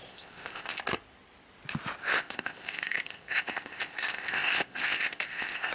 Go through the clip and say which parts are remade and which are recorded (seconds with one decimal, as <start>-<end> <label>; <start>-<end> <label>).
0.0-0.8 remade; 0.8-2.0 recorded; 2.0-5.7 remade

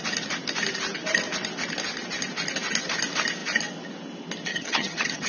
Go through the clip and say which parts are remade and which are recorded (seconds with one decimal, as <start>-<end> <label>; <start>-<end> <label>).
0.0-4.5 recorded; 4.5-5.3 remade

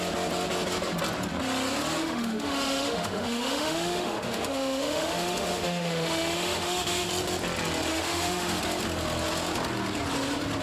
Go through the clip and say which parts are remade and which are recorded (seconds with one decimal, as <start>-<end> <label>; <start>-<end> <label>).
0.0-2.0 recorded; 2.0-7.1 remade; 7.1-7.9 recorded; 7.9-8.6 remade; 8.6-10.6 recorded

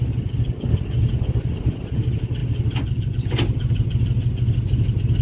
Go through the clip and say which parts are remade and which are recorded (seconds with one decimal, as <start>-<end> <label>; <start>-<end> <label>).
0.0-5.2 recorded

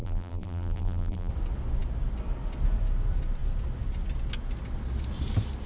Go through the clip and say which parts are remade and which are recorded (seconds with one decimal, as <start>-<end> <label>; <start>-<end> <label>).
0.0-1.3 remade; 1.3-5.7 recorded

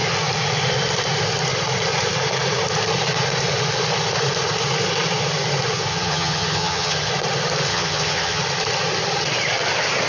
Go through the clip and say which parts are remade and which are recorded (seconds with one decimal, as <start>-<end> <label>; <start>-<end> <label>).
0.0-5.9 recorded; 5.9-7.1 remade; 7.1-7.7 recorded; 7.7-8.4 remade; 8.4-10.1 recorded

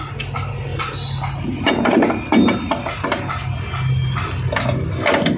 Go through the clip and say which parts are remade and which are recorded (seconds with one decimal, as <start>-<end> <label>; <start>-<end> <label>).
0.0-5.4 recorded